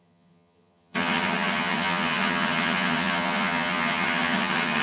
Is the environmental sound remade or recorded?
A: remade